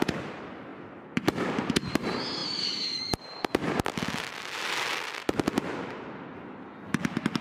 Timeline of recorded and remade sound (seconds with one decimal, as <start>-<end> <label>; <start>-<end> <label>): 0.0-0.7 recorded; 0.7-1.5 remade; 1.5-2.4 recorded; 2.4-3.9 remade; 3.9-7.4 recorded